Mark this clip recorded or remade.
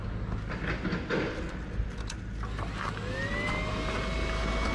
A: recorded